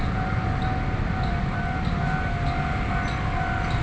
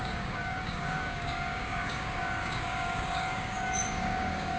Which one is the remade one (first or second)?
second